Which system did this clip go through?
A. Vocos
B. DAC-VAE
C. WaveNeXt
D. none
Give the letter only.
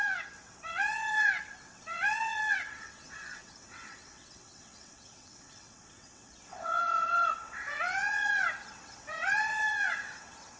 C